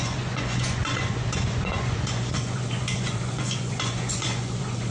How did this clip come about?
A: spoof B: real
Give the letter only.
A